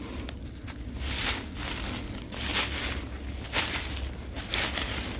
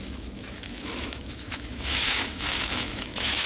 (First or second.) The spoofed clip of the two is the second